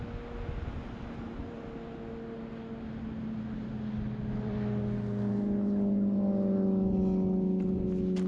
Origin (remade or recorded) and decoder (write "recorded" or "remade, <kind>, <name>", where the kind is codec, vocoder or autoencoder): recorded